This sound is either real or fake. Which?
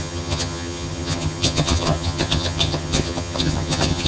fake